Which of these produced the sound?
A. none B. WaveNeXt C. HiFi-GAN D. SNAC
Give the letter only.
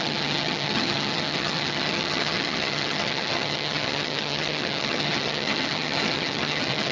C